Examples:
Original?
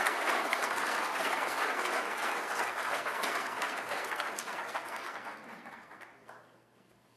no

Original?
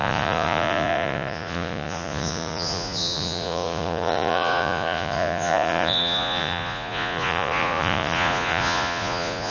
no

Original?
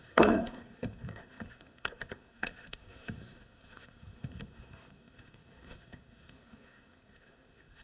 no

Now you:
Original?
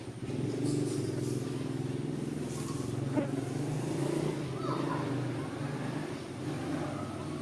yes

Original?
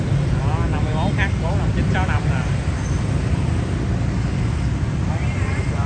yes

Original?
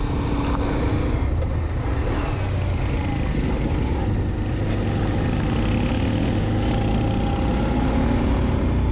yes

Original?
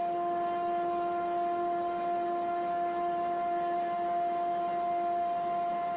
yes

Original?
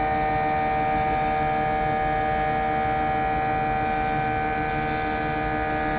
yes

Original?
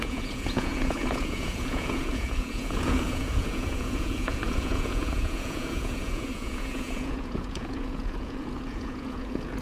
no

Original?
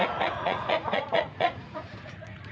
no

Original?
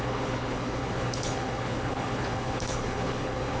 no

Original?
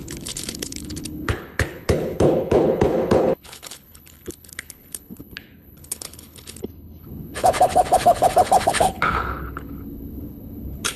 no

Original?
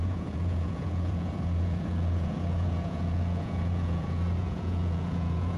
no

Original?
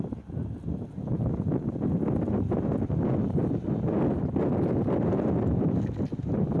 yes